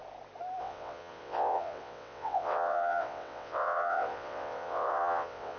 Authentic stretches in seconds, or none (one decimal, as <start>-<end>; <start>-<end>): 0.0-0.6